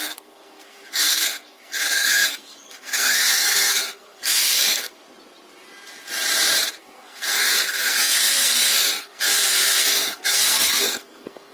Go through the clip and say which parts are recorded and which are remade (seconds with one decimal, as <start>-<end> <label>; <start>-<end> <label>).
0.0-5.0 remade; 5.0-6.8 recorded; 6.8-11.5 remade